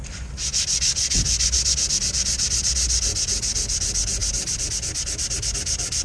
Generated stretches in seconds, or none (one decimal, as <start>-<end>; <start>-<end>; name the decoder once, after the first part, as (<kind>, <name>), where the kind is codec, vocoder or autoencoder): none